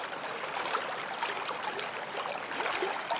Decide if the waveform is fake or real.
real